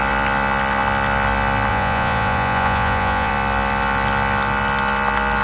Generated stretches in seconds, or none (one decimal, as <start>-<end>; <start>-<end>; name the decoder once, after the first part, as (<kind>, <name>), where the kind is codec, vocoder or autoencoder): 1.7-3.3 (vocoder, Vocos)